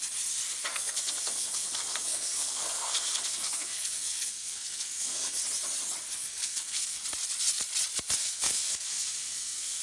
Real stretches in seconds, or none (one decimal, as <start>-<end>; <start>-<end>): 0.0-0.7; 5.4-6.2; 7.0-8.2